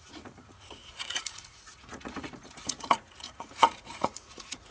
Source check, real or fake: fake